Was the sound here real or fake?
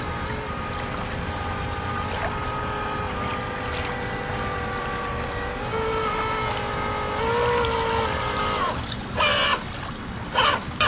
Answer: real